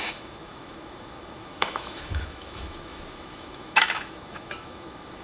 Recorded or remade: remade